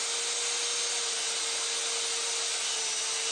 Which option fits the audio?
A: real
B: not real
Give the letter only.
A